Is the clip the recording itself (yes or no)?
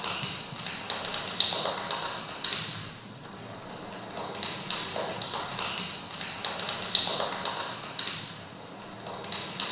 yes